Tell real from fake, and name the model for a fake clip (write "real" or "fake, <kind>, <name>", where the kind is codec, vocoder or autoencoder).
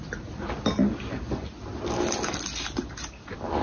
real